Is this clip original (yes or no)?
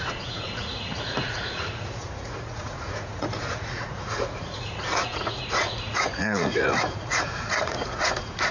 no